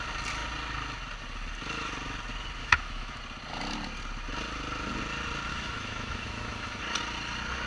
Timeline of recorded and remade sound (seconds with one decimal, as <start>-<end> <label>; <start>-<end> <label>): 0.0-2.6 recorded; 2.6-3.2 remade; 3.2-5.5 recorded; 5.5-6.8 remade; 6.8-7.7 recorded